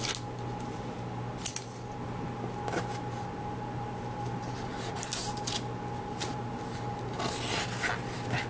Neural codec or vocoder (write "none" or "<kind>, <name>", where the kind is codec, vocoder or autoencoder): none